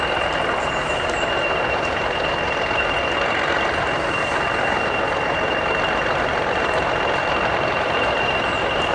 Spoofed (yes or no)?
yes